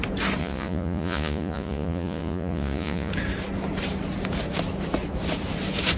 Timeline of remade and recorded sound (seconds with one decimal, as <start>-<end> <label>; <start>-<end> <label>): 0.0-0.4 recorded; 0.4-3.1 remade; 3.1-6.0 recorded